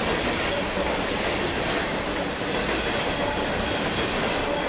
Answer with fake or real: real